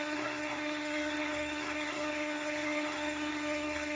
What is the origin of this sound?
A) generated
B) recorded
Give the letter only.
A